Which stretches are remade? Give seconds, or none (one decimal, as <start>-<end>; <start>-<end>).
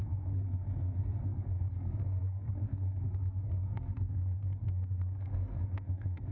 0.0-6.3